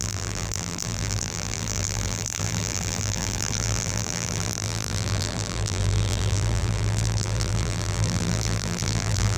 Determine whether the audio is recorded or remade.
remade